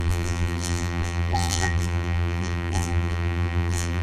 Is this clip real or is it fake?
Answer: fake